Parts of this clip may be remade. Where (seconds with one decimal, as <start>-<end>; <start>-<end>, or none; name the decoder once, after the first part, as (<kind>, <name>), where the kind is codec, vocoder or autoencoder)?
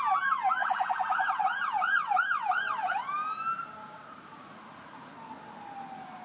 3.8-5.1 (vocoder, Vocos)